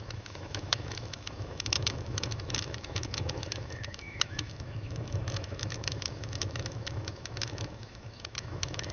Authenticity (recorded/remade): remade